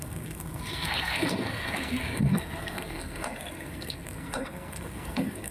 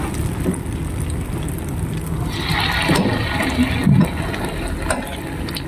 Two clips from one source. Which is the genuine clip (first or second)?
second